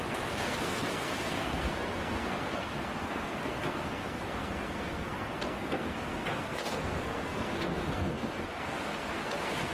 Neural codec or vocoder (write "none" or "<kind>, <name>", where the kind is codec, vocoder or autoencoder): codec, SNAC